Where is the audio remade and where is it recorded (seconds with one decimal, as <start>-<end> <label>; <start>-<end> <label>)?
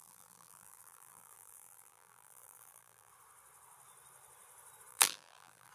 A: 0.0-3.1 remade; 3.1-4.9 recorded; 4.9-5.7 remade